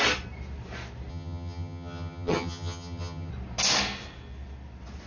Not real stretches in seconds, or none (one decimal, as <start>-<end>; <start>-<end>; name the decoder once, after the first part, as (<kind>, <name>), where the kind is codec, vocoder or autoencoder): 1.1-3.3 (vocoder, HiFi-GAN)